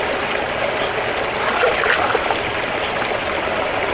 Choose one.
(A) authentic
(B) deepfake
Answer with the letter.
A